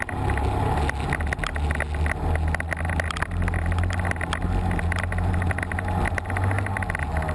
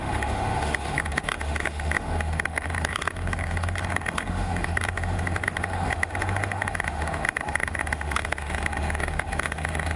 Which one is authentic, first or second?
first